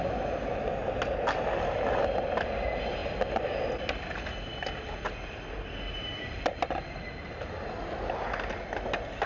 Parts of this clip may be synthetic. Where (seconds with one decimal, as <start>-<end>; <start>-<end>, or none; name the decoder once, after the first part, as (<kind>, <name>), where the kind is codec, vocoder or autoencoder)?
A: none